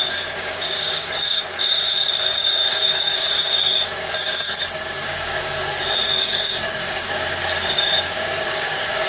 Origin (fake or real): fake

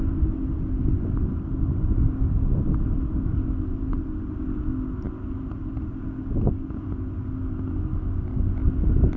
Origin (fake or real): real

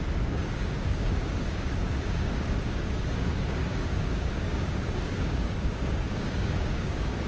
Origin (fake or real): fake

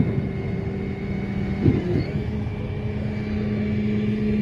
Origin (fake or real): real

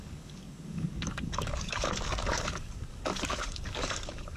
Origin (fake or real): fake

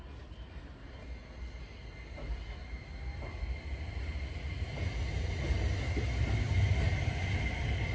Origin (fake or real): real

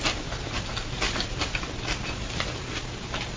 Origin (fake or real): real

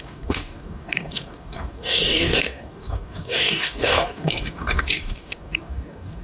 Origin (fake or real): fake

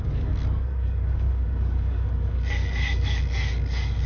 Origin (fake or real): fake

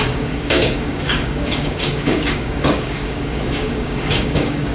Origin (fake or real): fake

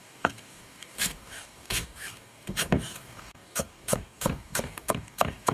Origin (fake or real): fake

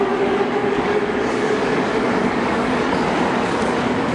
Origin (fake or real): fake